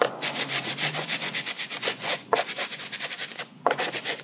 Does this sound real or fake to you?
fake